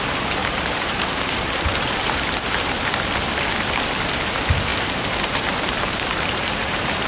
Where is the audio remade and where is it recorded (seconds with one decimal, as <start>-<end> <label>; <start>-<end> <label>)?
0.0-0.4 recorded; 0.4-1.9 remade; 1.9-4.7 recorded; 4.7-7.1 remade